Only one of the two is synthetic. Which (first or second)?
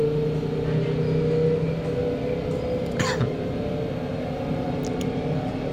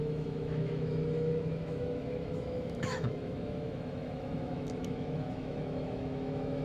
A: second